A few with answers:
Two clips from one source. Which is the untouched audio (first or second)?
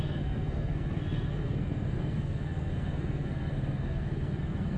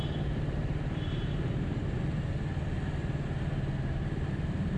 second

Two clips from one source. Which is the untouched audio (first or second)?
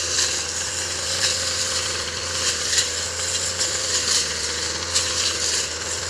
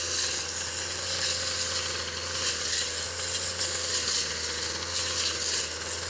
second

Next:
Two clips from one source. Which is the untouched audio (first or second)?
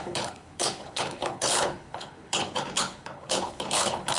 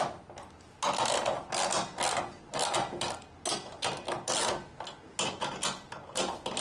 second